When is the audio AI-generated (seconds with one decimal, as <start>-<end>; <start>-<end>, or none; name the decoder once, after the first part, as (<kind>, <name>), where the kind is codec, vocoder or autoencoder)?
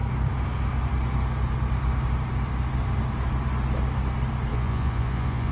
4.5-5.5 (vocoder, Vocos)